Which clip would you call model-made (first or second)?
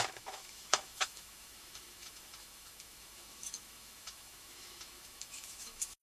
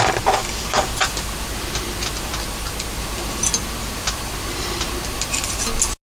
first